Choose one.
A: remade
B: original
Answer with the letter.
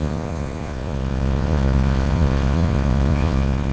A